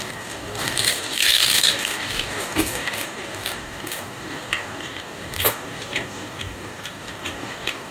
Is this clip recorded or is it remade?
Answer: remade